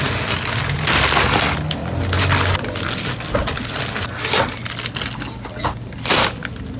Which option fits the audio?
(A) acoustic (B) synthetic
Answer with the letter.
A